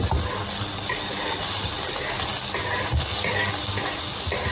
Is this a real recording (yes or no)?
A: yes